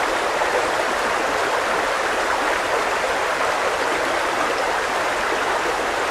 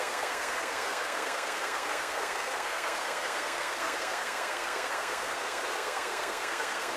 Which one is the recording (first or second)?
first